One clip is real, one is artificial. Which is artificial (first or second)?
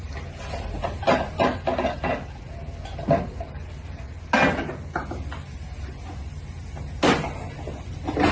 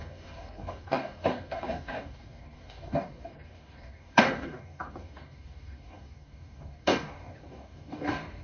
second